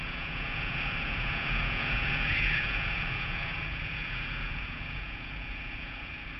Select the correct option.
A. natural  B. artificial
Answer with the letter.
B